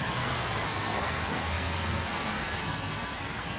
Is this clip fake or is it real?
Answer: fake